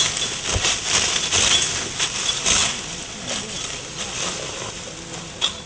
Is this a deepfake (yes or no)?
no